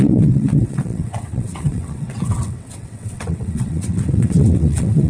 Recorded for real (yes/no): no